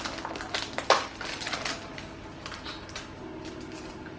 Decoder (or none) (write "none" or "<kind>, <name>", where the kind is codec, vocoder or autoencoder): none